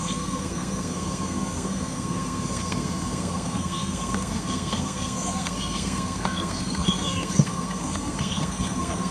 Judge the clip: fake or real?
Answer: fake